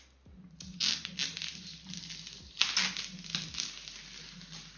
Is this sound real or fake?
real